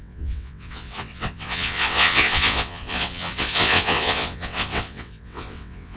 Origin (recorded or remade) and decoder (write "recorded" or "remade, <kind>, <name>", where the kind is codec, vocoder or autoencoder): remade, vocoder, WaveNeXt